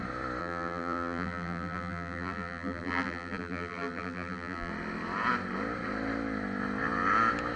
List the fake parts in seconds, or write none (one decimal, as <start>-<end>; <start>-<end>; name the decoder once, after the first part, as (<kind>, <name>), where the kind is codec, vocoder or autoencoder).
0.4-4.7 (vocoder, BigVGAN v2)